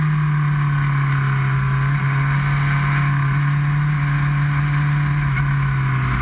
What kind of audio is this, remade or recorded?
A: recorded